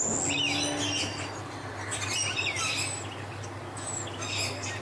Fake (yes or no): no